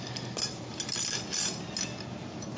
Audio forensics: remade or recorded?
recorded